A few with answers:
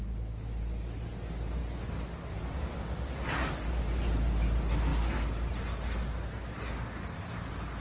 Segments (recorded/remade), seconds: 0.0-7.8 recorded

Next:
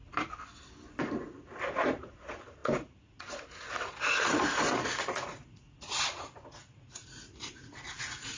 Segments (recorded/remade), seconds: 0.0-1.0 recorded; 1.0-8.4 remade

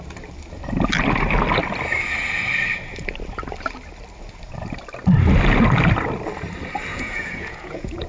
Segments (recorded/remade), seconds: 0.0-6.9 recorded; 6.9-8.1 remade

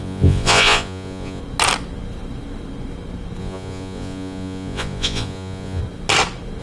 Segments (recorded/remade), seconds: 0.0-1.4 remade; 1.4-3.4 recorded; 3.4-5.8 remade; 5.8-6.6 recorded

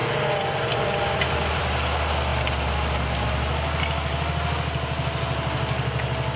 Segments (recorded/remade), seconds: 0.0-6.4 recorded

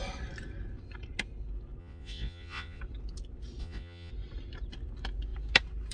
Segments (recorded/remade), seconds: 0.0-1.8 recorded; 1.8-2.8 remade; 2.8-3.6 recorded; 3.6-4.1 remade; 4.1-5.9 recorded

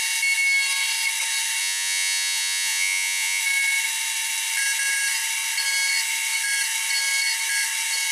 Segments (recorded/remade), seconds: 0.0-1.6 recorded; 1.6-3.4 remade; 3.4-8.1 recorded

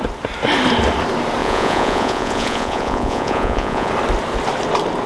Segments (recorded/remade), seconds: 0.0-1.4 recorded; 1.4-3.9 remade; 3.9-5.1 recorded